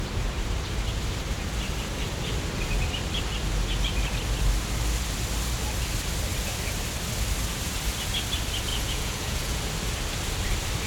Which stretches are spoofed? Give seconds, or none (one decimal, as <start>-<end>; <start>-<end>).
8.7-9.6